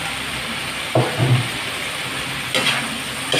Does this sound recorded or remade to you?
recorded